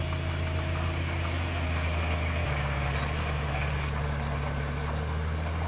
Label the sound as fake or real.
real